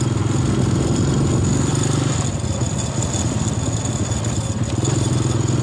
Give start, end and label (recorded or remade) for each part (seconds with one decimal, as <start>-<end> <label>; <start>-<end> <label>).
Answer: 0.0-5.6 recorded